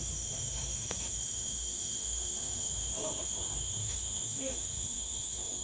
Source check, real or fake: fake